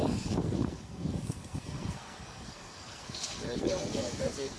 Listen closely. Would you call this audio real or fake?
fake